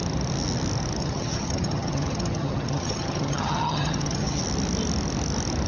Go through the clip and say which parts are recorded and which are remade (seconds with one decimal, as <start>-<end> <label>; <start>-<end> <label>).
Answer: 0.0-1.0 recorded; 1.0-4.4 remade; 4.4-5.7 recorded